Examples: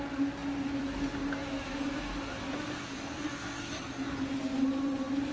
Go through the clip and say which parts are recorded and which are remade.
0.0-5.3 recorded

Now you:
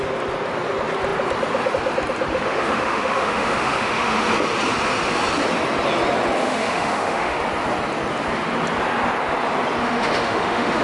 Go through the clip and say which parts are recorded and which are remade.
0.0-2.3 recorded; 2.3-4.3 remade; 4.3-6.4 recorded; 6.4-7.4 remade; 7.4-9.8 recorded; 9.8-10.8 remade

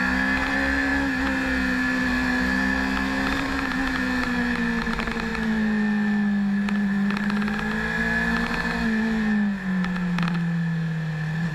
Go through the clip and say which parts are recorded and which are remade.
0.0-11.5 recorded

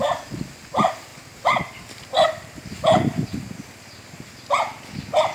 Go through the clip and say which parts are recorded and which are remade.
0.0-5.3 recorded

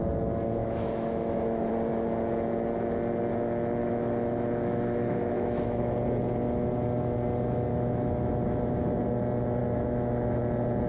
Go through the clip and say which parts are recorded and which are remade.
0.0-0.6 recorded; 0.6-1.7 remade; 1.7-3.8 recorded; 3.8-5.8 remade; 5.8-7.7 recorded; 7.7-9.0 remade; 9.0-9.6 recorded; 9.6-10.4 remade; 10.4-10.9 recorded

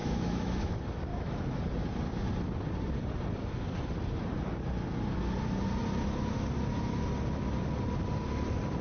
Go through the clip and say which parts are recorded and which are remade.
0.0-0.7 remade; 0.7-1.1 recorded; 1.1-1.6 remade; 1.6-8.8 recorded

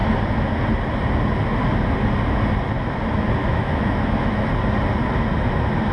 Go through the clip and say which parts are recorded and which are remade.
0.0-3.4 recorded; 3.4-4.5 remade; 4.5-5.9 recorded

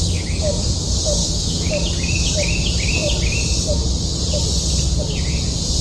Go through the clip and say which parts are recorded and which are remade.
0.0-1.2 recorded; 1.2-1.7 remade; 1.7-5.8 recorded